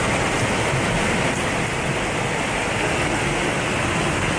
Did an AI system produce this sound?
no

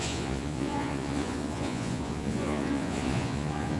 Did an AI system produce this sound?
yes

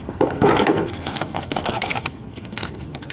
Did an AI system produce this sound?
yes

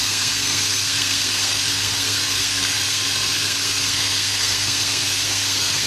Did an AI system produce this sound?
yes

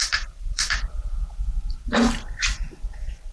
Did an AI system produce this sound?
yes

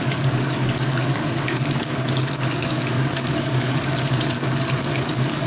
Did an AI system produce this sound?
yes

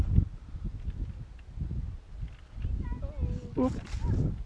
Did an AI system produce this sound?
no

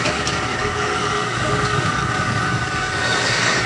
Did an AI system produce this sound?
yes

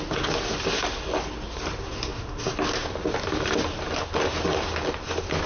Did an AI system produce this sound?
no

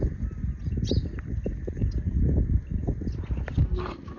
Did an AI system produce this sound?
no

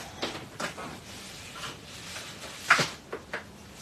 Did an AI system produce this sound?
no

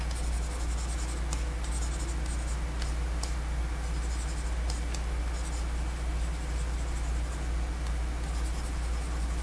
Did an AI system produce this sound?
no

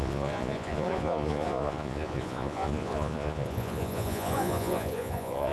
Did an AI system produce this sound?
yes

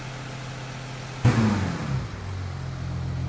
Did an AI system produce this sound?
no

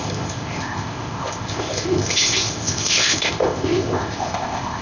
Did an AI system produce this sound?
yes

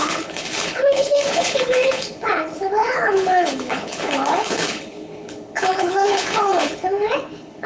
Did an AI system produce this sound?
yes